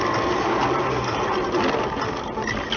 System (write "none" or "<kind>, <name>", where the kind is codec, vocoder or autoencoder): none